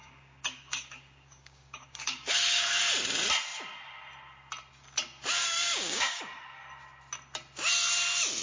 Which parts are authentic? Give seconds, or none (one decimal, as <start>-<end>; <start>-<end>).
2.8-5.4; 6.2-8.4